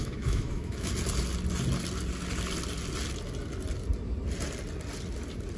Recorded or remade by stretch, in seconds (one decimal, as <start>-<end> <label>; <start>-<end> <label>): 0.0-0.9 remade; 0.9-5.6 recorded